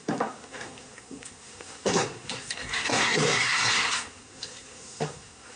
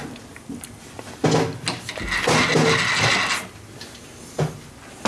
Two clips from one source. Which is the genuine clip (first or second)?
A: second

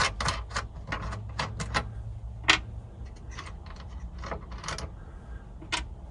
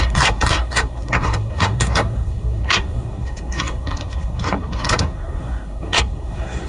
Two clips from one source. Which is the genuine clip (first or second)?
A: first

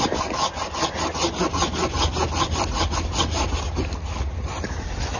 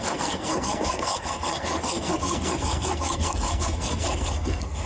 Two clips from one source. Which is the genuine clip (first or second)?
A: first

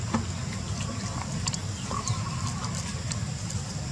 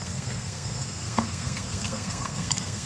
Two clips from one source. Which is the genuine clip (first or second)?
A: first